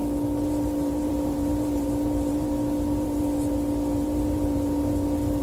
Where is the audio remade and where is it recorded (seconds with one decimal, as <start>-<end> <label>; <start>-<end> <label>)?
0.0-3.2 remade; 3.2-4.0 recorded; 4.0-5.4 remade